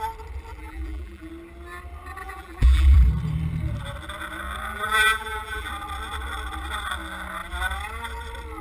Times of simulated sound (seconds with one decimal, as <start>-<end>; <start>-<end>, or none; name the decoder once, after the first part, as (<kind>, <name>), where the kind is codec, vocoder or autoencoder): 0.5-1.3 (vocoder, BigVGAN v2); 2.2-3.1; 4.7-5.7